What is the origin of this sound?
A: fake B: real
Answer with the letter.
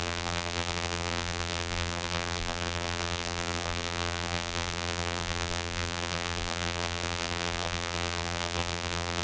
A